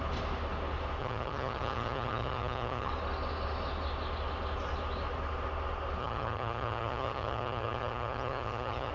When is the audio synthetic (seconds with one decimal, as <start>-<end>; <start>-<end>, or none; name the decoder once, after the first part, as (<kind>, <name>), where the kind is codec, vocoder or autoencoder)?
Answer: 1.0-2.9 (vocoder, HiFi-GAN); 6.0-8.9